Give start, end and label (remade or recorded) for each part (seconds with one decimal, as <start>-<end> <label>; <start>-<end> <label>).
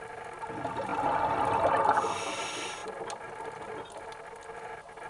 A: 0.0-5.1 recorded